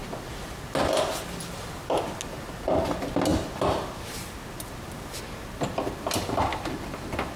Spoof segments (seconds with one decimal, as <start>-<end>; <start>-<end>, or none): none